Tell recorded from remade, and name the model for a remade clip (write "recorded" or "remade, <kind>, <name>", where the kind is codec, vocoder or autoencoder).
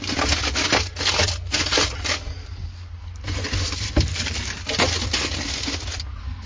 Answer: recorded